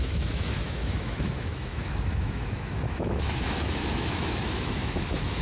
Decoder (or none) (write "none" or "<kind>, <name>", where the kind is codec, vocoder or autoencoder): autoencoder, DAC-VAE